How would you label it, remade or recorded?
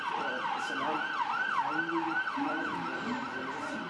recorded